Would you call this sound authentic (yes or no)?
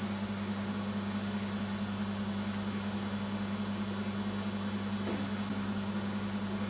yes